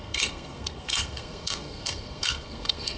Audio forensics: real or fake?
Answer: fake